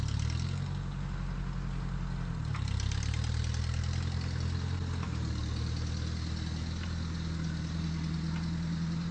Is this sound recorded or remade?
recorded